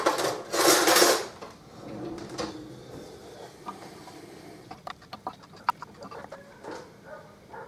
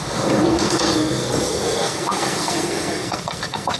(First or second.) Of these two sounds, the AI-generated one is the second